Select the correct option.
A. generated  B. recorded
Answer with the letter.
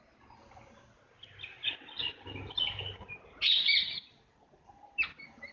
B